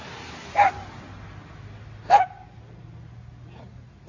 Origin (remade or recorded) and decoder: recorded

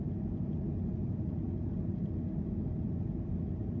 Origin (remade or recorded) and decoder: recorded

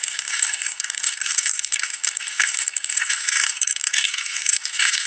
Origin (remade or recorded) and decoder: remade, codec, SNAC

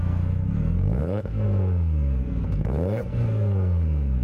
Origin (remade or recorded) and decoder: remade, codec, SNAC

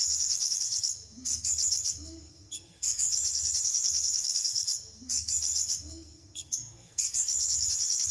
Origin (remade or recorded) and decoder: remade, codec, SNAC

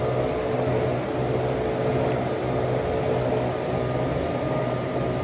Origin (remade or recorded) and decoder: recorded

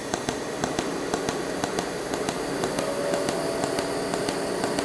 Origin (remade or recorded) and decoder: recorded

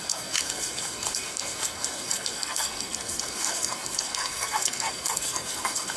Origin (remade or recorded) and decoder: remade, codec, SNAC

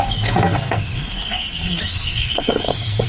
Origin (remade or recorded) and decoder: remade, codec, SNAC